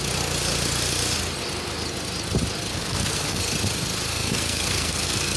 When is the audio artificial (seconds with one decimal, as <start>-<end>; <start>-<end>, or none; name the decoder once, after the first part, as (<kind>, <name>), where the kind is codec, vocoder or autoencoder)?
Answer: 2.7-3.4 (codec, SNAC); 4.1-5.4